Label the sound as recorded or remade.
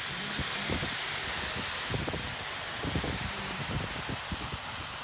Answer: recorded